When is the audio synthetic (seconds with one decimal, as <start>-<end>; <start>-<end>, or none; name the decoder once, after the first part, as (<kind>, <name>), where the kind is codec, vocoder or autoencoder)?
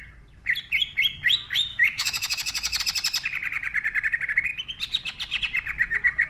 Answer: 1.7-2.8 (autoencoder, DAC-VAE)